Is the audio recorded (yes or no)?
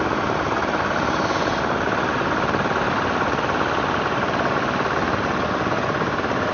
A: yes